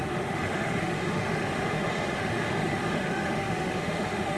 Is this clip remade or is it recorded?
remade